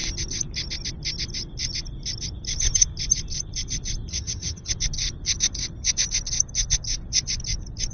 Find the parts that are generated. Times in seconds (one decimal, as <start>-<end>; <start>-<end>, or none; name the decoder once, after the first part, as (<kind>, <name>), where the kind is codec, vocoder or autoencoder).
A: 4.1-4.7 (vocoder, HiFi-GAN)